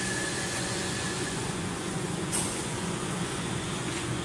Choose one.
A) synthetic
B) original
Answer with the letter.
A